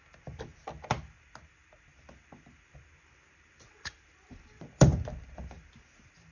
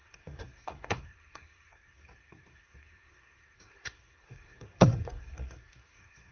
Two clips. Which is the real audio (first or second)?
first